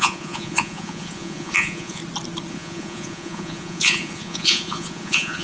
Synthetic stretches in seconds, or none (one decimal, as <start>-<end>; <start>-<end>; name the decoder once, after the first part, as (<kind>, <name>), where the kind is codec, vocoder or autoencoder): 0.0-2.0 (vocoder, Vocos); 2.5-5.4